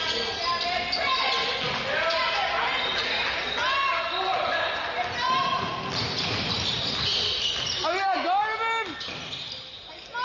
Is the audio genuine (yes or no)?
yes